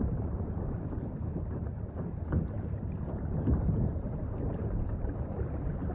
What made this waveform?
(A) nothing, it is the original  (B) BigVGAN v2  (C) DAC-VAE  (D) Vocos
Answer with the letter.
A